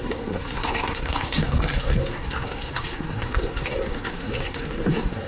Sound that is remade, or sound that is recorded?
remade